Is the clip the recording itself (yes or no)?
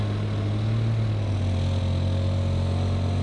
yes